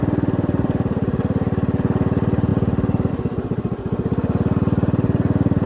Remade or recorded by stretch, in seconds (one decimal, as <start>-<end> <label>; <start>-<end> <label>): 0.0-5.7 recorded